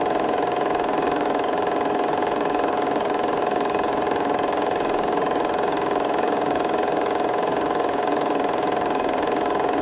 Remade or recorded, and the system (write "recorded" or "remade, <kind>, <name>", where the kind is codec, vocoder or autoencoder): remade, codec, DAC